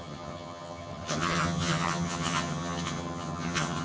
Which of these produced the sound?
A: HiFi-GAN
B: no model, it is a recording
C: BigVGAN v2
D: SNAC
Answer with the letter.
A